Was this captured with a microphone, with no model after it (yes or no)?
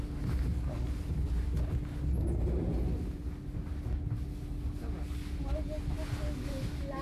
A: yes